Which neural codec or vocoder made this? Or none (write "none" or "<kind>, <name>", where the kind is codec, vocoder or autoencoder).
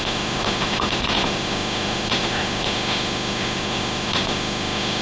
autoencoder, DAC-VAE